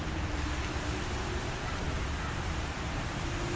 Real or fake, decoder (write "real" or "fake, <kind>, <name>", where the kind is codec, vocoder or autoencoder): real